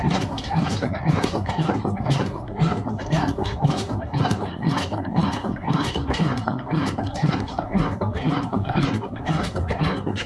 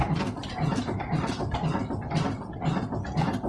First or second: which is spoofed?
first